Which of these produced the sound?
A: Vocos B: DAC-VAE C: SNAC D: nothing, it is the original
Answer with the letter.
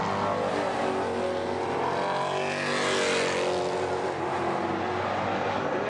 D